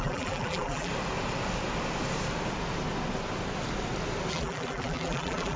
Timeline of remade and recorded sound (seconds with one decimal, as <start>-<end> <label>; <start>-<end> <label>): 0.0-0.9 remade; 0.9-4.3 recorded; 4.3-5.6 remade